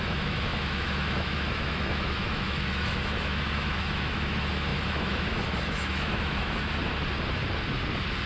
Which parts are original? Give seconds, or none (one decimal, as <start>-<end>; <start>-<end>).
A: 6.8-8.3